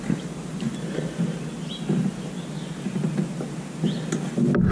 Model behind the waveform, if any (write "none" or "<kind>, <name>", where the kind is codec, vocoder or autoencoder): none